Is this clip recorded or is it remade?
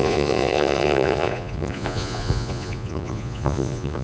remade